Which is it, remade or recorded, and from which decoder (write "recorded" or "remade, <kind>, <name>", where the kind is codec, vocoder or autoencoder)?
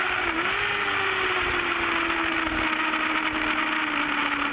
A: recorded